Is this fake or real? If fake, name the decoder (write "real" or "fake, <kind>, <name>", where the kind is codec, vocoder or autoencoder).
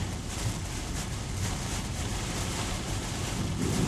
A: real